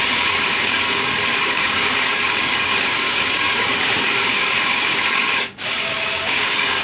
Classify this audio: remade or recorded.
remade